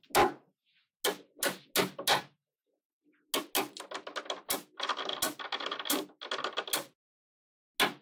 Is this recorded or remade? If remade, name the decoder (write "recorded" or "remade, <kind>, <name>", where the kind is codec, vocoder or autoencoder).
recorded